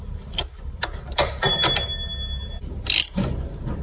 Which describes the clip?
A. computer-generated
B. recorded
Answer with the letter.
B